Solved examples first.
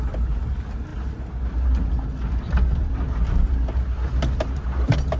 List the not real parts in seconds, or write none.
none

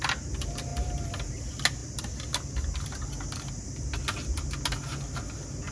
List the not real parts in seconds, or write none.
none

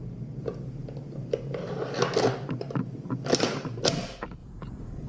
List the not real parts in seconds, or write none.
4.4-5.1 (vocoder, Vocos)

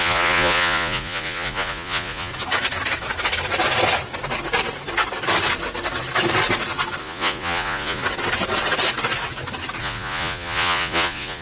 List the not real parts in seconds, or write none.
0.0-2.3 (vocoder, Vocos); 7.0-8.0; 9.8-11.4

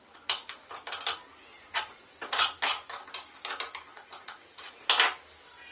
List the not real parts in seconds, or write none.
1.5-2.4 (vocoder, Vocos); 3.9-4.7

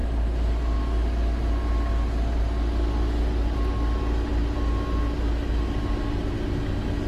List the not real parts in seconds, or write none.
none